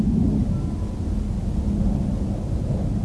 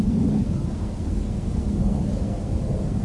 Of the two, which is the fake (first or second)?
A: second